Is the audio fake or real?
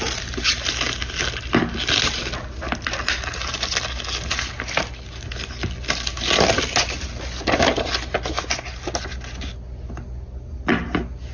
real